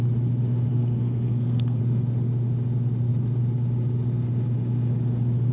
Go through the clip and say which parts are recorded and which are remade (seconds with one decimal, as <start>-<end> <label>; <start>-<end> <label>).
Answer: 0.0-0.7 recorded; 0.7-1.8 remade; 1.8-5.5 recorded